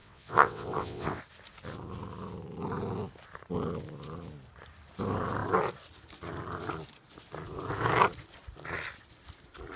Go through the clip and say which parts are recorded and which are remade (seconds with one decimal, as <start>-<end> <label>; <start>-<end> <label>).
0.0-1.2 remade; 1.2-9.8 recorded